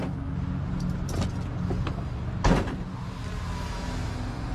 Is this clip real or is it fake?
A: real